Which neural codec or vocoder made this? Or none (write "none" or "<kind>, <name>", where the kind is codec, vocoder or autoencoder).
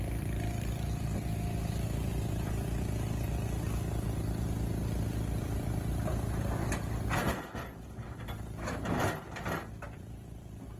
none